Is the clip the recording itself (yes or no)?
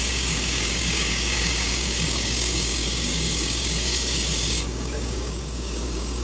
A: no